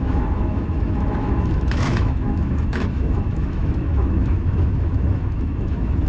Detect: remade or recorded remade